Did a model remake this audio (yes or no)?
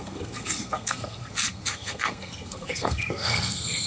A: yes